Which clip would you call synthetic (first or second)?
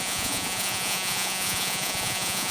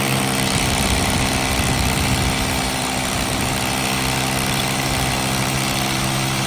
first